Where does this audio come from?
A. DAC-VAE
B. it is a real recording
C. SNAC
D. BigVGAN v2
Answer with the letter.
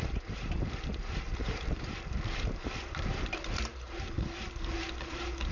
D